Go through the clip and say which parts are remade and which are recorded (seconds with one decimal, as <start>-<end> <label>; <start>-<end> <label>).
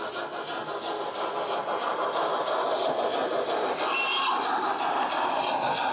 0.0-5.9 recorded